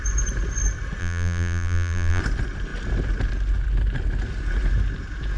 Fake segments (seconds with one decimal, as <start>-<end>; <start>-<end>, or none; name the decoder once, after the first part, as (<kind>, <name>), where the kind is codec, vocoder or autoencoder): 1.0-2.2 (vocoder, BigVGAN v2)